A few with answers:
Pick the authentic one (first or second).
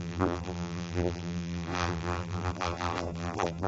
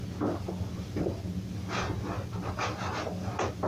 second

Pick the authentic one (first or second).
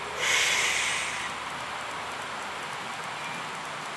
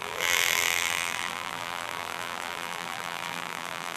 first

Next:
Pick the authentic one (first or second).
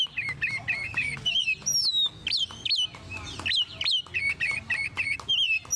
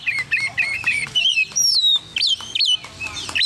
first